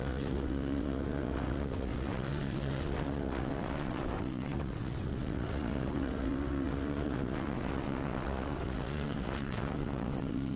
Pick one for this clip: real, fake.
fake